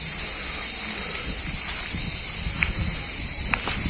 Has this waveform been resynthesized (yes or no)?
no